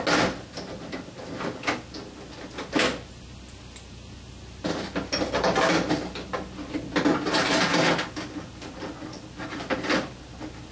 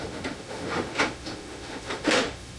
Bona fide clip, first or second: first